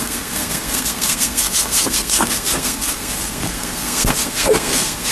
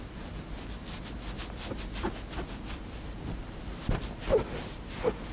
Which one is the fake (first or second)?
first